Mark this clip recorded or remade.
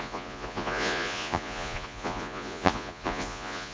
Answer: remade